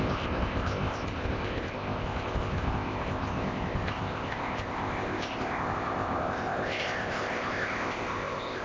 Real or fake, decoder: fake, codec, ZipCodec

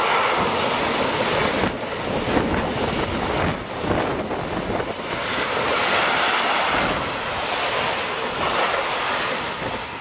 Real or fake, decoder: real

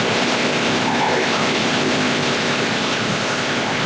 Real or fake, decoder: fake, codec, ZipCodec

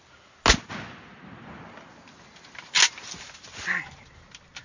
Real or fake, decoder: real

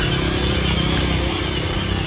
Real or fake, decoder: real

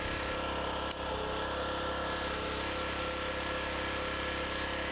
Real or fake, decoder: real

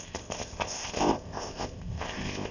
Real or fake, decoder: fake, codec, ZipCodec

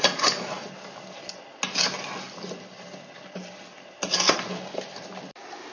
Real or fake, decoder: real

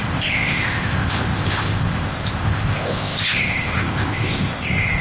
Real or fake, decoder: fake, codec, ZipCodec